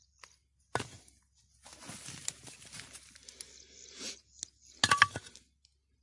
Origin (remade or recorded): recorded